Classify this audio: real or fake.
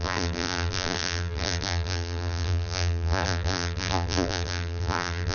fake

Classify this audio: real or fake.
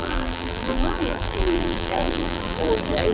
fake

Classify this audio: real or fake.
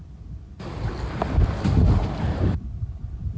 real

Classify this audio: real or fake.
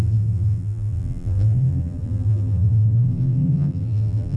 fake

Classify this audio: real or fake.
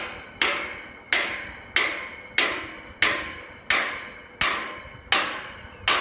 real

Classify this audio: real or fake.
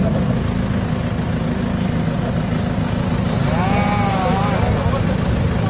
real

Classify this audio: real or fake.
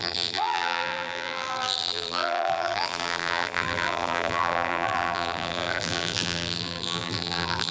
fake